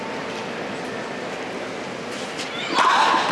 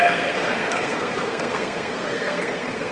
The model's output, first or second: second